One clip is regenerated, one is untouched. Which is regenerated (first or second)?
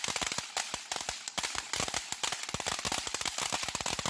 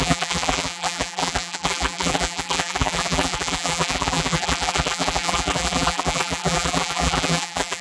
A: second